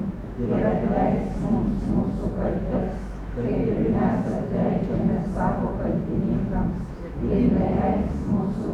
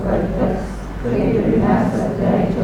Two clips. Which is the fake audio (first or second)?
first